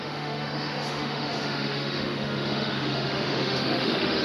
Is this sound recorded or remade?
remade